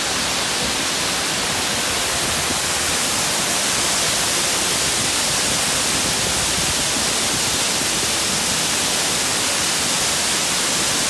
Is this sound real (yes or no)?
yes